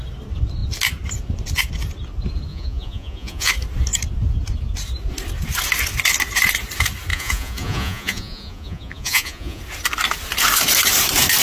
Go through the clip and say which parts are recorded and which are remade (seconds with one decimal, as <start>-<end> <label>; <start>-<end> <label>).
0.0-2.5 recorded; 2.5-3.5 remade; 3.5-7.1 recorded; 7.1-9.6 remade; 9.6-11.4 recorded